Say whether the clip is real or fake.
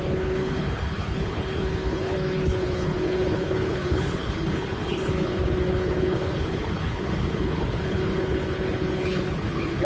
fake